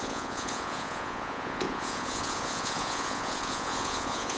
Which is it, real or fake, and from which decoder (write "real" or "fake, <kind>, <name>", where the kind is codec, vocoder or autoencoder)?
fake, vocoder, Vocos